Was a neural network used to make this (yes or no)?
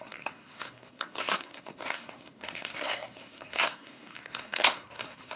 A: yes